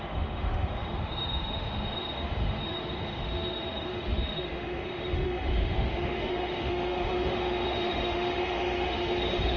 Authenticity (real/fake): fake